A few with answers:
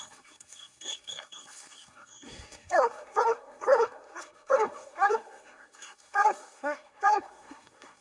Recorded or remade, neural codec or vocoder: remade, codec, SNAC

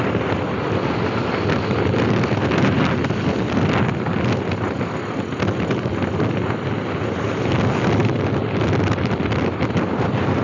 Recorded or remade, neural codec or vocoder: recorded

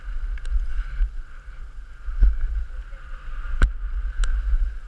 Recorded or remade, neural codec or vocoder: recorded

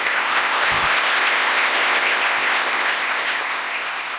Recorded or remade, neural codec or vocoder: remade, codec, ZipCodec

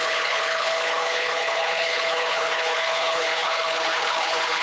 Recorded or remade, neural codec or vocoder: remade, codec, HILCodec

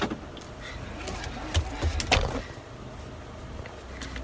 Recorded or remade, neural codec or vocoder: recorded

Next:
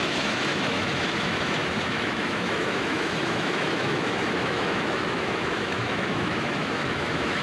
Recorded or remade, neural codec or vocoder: remade, autoencoder, DAC-VAE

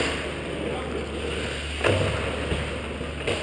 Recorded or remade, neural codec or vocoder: recorded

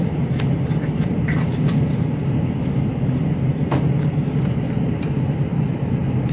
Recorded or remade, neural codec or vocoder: recorded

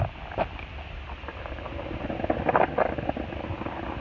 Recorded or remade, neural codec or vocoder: recorded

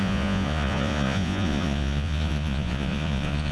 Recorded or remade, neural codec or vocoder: remade, vocoder, Vocos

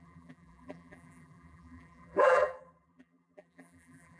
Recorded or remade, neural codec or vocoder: remade, vocoder, BigVGAN v2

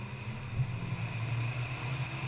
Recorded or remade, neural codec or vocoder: recorded